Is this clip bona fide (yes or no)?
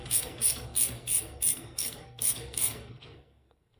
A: no